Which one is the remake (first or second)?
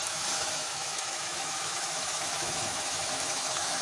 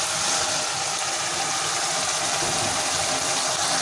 first